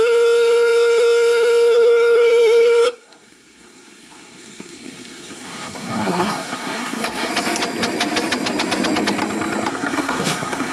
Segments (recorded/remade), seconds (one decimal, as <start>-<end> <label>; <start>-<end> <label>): 0.0-7.3 remade; 7.3-9.7 recorded; 9.7-10.7 remade